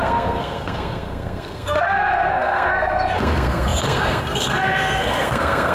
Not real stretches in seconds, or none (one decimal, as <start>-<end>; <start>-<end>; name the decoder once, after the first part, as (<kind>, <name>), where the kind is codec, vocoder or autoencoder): 0.0-5.7 (codec, SNAC)